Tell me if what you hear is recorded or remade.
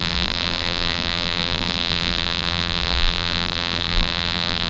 remade